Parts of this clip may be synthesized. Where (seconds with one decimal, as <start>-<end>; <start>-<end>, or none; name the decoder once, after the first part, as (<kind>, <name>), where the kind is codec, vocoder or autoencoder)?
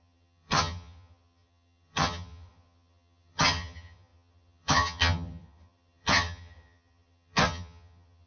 0.0-8.3 (vocoder, HiFi-GAN)